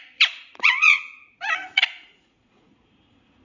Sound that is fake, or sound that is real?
fake